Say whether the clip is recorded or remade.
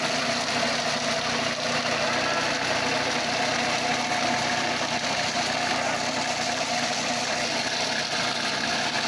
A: recorded